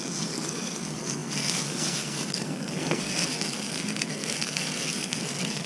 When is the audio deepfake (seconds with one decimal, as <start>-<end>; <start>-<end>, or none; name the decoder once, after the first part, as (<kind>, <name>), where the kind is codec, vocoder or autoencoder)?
0.0-5.7 (codec, SNAC)